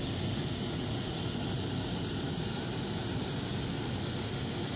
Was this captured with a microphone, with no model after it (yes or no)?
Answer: yes